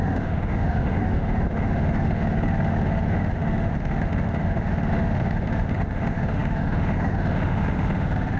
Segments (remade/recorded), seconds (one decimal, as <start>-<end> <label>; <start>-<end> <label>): 0.0-8.4 remade